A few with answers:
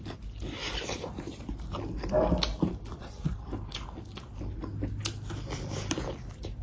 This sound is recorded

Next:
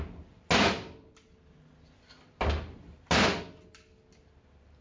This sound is recorded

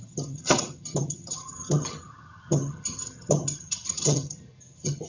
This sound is remade